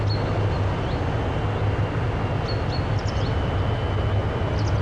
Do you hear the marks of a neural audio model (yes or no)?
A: no